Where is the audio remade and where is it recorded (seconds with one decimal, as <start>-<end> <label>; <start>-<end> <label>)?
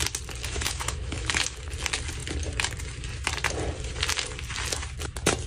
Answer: 0.0-0.4 recorded; 0.4-1.6 remade; 1.6-5.5 recorded